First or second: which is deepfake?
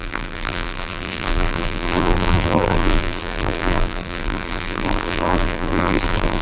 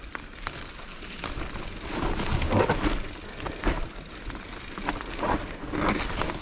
first